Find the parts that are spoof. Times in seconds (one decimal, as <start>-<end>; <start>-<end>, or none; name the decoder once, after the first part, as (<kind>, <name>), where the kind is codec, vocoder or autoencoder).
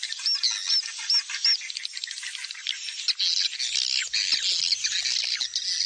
none